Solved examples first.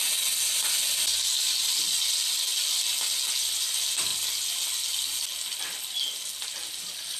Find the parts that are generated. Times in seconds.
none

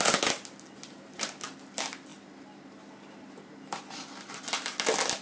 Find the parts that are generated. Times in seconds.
none

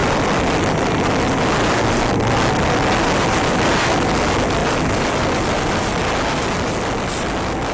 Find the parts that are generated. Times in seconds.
0.0-1.1 (vocoder, BigVGAN v2); 4.6-5.8

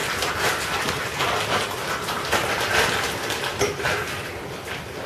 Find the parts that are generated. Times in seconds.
0.0-1.0 (vocoder, BigVGAN v2)

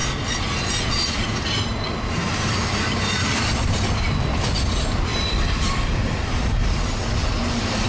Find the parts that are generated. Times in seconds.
3.0-6.6 (vocoder, BigVGAN v2); 7.5-7.9

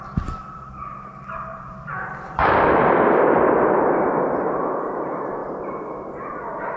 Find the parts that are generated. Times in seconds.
0.0-5.4 (vocoder, BigVGAN v2); 6.3-6.8

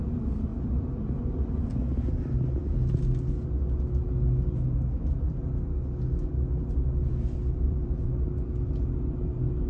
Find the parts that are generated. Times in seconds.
7.0-8.2 (vocoder, BigVGAN v2)